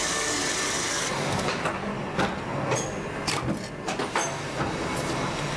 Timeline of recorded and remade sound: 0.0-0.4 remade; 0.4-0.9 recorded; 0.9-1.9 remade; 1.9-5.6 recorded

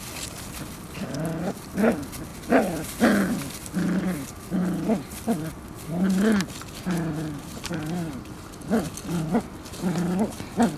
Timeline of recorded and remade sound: 0.0-10.8 recorded

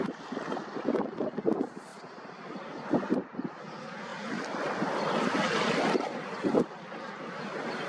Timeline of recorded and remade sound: 0.0-7.9 recorded

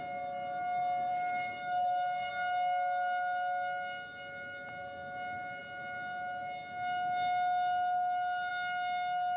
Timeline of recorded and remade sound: 0.0-1.1 recorded; 1.1-2.3 remade; 2.3-9.4 recorded